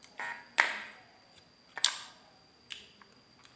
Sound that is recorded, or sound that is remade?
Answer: recorded